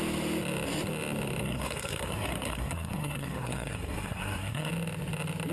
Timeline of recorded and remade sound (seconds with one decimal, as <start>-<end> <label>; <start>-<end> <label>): 0.0-1.4 recorded; 1.4-4.7 remade; 4.7-5.5 recorded